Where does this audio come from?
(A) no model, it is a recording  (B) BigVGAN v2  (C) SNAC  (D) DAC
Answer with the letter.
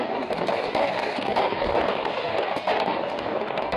D